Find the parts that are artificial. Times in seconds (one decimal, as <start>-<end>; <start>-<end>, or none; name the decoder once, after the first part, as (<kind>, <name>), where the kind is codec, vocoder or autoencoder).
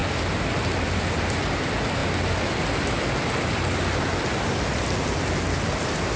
none